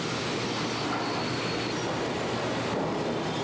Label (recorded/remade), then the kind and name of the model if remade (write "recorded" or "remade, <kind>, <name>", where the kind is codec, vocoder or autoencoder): recorded